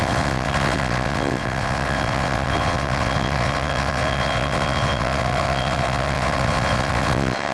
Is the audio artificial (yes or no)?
yes